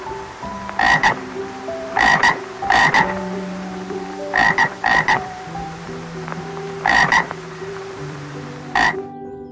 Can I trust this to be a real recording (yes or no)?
no